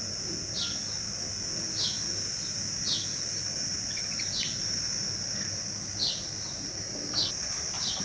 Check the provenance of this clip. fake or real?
real